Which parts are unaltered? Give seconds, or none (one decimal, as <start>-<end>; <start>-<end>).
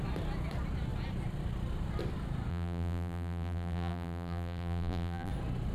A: 0.0-2.5; 5.3-5.7